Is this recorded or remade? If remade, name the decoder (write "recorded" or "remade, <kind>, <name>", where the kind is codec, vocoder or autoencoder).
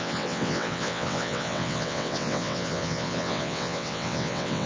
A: remade, vocoder, WaveNeXt